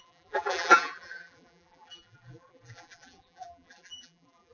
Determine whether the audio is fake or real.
fake